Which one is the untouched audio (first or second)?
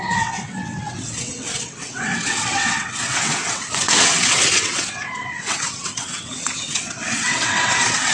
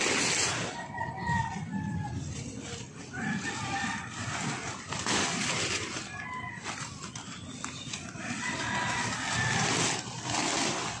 second